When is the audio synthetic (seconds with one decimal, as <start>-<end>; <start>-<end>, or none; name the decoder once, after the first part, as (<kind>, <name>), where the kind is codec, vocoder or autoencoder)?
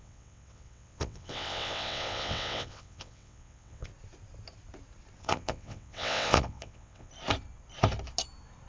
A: 0.0-3.9 (vocoder, WaveNeXt); 5.2-7.1